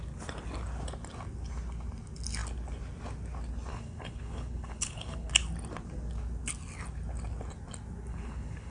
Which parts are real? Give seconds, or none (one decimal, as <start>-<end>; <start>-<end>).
0.0-3.7; 5.3-8.1